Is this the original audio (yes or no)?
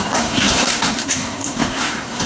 no